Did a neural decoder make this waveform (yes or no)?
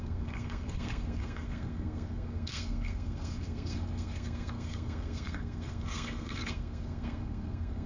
yes